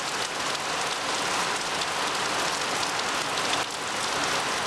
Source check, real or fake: real